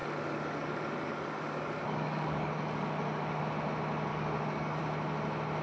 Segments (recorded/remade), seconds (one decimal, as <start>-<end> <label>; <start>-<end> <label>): 0.0-3.4 remade; 3.4-4.1 recorded; 4.1-4.8 remade; 4.8-5.6 recorded